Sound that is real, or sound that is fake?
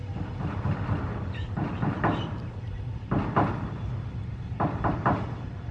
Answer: real